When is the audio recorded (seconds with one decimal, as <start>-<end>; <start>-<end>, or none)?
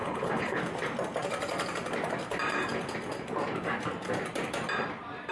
0.6-5.3